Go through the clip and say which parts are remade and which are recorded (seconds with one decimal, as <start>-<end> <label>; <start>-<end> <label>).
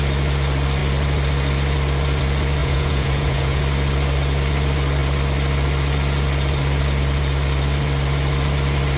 0.0-2.6 recorded; 2.6-3.6 remade; 3.6-9.0 recorded